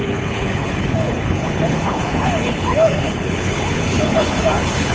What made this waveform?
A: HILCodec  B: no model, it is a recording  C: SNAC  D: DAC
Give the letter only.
A